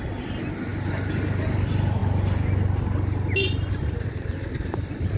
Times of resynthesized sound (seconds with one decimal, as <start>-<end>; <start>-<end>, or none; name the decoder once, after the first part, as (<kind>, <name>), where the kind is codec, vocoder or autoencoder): none